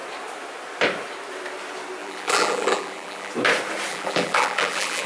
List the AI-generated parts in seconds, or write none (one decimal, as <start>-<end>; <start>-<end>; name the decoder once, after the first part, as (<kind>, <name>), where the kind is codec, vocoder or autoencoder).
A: 2.0-3.3 (vocoder, BigVGAN v2); 3.9-5.1